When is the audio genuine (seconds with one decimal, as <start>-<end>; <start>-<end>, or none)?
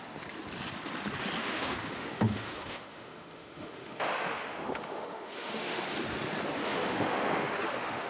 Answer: 0.0-1.4; 5.8-6.6